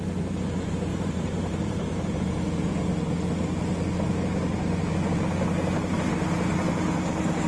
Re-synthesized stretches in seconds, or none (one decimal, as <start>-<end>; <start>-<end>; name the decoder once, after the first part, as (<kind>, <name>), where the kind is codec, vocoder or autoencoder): 0.9-2.3 (vocoder, BigVGAN v2)